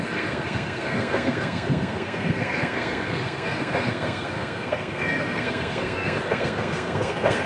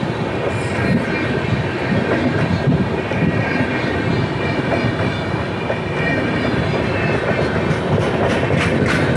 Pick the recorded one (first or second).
second